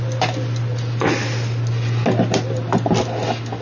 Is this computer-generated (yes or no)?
no